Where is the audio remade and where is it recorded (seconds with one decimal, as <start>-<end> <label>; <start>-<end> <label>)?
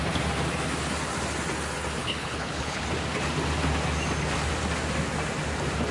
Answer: 0.0-2.0 recorded; 2.0-2.8 remade; 2.8-5.9 recorded